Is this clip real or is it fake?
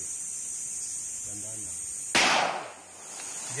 real